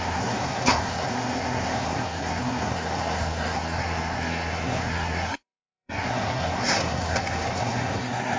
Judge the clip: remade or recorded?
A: remade